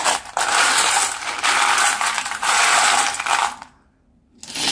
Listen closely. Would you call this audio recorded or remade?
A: recorded